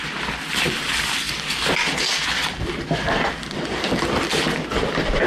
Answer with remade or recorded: recorded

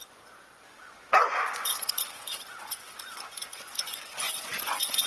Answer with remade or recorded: remade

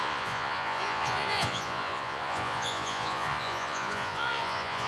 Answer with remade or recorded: remade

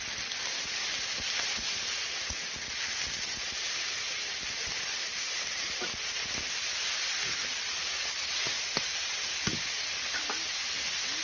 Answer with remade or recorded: recorded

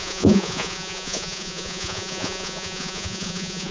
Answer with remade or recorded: remade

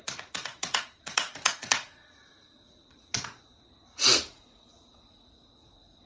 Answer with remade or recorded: remade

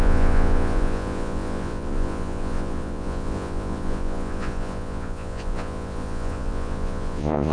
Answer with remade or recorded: remade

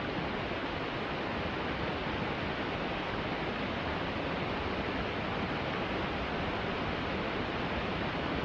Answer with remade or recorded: recorded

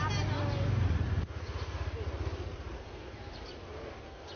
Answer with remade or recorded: recorded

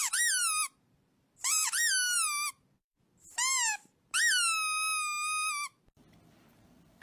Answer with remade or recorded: recorded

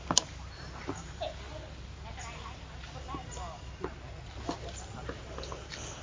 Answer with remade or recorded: recorded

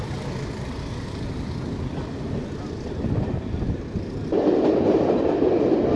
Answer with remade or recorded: recorded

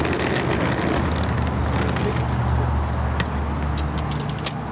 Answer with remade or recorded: recorded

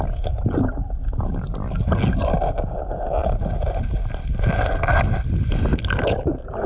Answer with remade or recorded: recorded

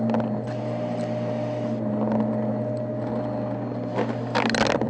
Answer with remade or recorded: recorded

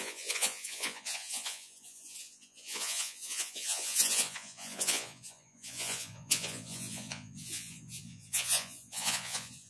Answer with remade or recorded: remade